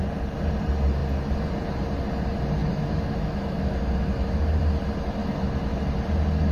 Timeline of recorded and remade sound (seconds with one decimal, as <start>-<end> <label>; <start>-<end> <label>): 0.0-2.6 recorded; 2.6-4.6 remade; 4.6-5.2 recorded; 5.2-5.7 remade; 5.7-6.5 recorded